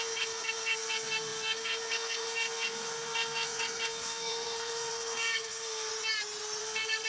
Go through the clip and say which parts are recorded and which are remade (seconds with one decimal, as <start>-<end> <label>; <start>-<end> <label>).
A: 0.0-5.9 remade; 5.9-6.6 recorded; 6.6-7.1 remade